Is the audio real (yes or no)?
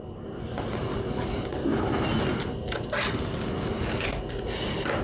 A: yes